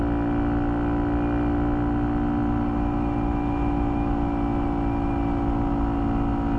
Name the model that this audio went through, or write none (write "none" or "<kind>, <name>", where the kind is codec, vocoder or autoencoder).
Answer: none